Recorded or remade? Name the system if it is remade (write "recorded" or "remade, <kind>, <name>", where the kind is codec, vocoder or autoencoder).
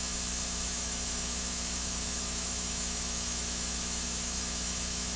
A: remade, autoencoder, DAC-VAE